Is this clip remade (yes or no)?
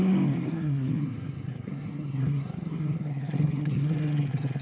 yes